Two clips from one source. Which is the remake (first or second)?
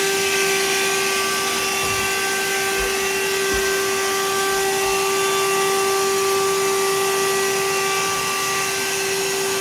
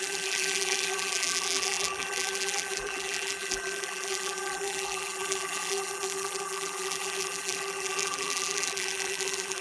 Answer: second